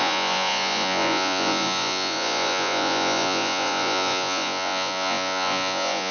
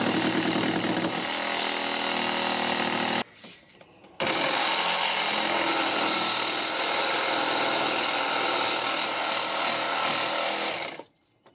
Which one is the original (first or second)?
second